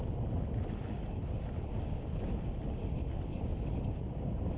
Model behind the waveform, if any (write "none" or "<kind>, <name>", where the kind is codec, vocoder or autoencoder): none